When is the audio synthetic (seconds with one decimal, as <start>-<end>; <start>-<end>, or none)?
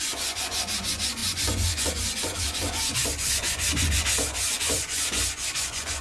0.0-6.0